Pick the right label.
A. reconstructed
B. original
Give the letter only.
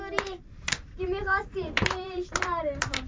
A